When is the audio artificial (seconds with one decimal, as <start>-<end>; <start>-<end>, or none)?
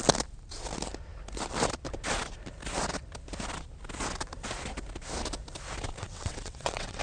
6.0-7.0